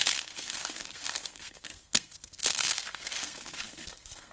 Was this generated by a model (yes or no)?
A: yes